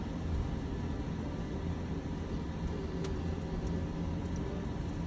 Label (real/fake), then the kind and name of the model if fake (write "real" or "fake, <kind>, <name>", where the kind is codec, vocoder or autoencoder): real